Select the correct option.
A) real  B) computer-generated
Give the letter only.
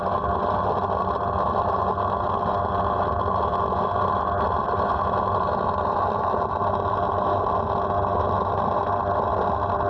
A